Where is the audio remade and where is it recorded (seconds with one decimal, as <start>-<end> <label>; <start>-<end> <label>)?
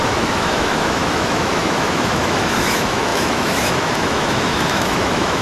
0.0-5.4 remade